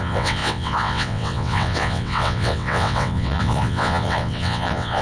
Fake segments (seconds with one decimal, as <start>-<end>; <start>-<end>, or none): 0.0-5.0